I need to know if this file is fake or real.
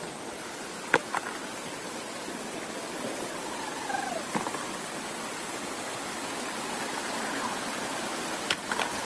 real